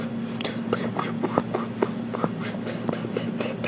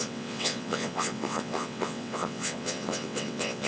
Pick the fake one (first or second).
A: second